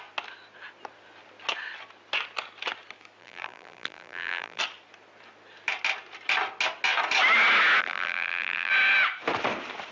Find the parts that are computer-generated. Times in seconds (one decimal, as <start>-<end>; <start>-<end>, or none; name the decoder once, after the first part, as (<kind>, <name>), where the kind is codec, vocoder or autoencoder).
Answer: 3.2-4.6 (vocoder, BigVGAN v2); 7.8-8.7